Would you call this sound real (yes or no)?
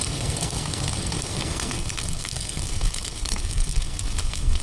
no